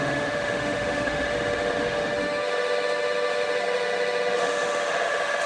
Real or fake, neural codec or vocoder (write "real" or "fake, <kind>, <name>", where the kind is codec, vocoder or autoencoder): fake, autoencoder, DAC-VAE